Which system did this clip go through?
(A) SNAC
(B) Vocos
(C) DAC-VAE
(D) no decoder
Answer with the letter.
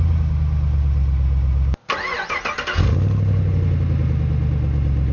D